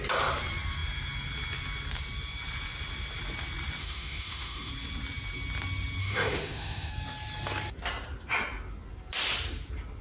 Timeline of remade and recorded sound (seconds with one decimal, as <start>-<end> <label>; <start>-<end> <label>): 0.0-3.8 recorded; 3.8-4.7 remade; 4.7-6.0 recorded; 6.0-6.9 remade; 6.9-10.0 recorded